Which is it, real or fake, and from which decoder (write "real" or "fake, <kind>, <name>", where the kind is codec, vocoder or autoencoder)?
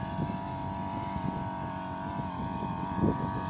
real